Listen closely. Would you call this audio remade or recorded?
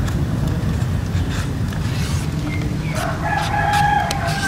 recorded